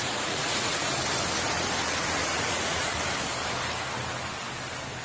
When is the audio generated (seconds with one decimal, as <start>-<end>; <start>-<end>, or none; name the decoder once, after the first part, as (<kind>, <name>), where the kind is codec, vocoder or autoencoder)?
0.0-0.9 (vocoder, Vocos); 2.2-3.0

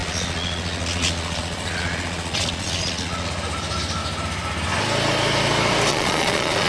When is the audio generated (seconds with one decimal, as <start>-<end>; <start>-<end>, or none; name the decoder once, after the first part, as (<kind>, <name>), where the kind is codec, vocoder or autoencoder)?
0.0-3.3 (vocoder, Vocos); 5.9-6.7

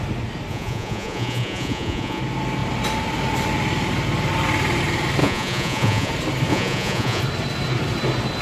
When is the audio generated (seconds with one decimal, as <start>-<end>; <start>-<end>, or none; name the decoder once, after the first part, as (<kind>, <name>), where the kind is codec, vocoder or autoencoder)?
0.5-2.2 (vocoder, Vocos); 5.2-6.1; 6.5-7.2

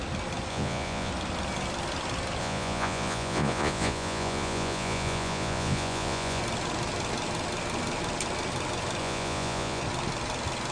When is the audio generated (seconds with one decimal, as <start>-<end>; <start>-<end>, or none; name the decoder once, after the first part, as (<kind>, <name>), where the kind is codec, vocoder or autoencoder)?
0.5-1.1 (vocoder, Vocos); 2.4-6.4; 9.0-9.8

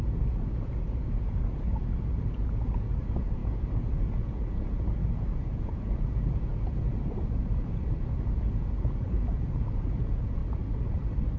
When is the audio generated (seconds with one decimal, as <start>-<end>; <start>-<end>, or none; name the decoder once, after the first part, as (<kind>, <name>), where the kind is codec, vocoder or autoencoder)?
0.0-10.4 (vocoder, Vocos)

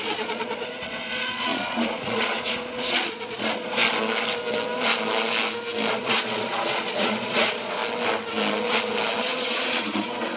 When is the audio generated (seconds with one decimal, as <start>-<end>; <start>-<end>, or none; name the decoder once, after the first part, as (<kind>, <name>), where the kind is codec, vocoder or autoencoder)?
0.0-3.8 (vocoder, Vocos); 5.9-7.8; 9.2-10.4

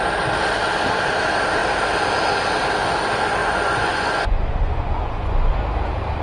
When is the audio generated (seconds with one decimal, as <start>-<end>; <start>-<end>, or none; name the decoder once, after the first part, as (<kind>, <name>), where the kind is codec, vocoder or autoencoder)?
3.4-5.5 (vocoder, Vocos)

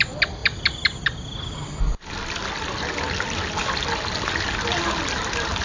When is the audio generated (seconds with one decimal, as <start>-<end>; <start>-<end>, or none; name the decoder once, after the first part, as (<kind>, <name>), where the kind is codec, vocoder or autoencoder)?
none